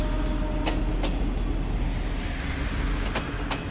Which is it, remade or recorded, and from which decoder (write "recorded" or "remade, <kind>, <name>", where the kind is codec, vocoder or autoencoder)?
recorded